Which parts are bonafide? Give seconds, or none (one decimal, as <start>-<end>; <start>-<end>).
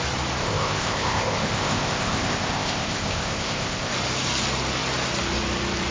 0.0-0.4; 3.9-5.9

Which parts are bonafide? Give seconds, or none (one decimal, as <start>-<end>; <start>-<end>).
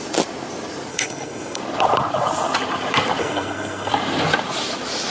0.0-0.9; 1.6-3.2; 3.9-5.1